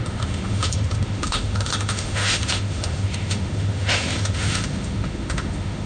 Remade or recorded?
remade